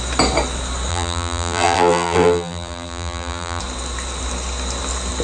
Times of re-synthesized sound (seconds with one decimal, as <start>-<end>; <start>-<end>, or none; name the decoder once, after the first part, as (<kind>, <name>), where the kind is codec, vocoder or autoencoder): 0.9-3.6 (vocoder, BigVGAN v2)